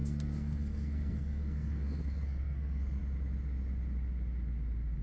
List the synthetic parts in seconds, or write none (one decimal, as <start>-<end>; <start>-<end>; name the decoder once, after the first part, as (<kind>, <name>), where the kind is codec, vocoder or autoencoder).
0.0-3.0 (codec, SNAC)